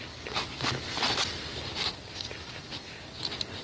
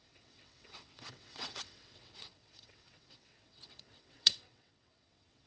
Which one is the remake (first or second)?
second